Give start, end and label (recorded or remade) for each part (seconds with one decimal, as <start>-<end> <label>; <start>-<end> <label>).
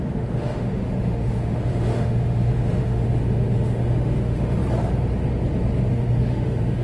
0.0-4.6 remade; 4.6-5.9 recorded; 5.9-6.8 remade